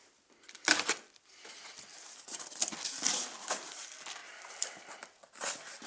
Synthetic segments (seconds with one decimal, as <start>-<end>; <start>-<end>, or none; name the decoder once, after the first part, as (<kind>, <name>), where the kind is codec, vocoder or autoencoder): none